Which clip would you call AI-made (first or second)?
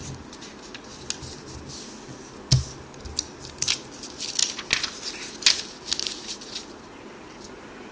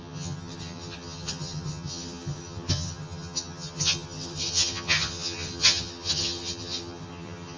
second